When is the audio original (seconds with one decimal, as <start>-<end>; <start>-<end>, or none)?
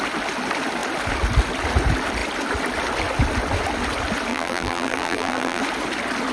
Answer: 0.0-4.3; 5.6-6.3